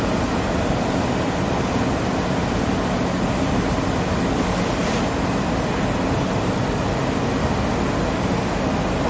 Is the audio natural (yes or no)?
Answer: yes